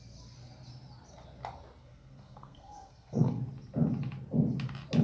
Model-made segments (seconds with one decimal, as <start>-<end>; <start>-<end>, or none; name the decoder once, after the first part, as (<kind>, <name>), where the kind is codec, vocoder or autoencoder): 1.8-3.4 (codec, SNAC)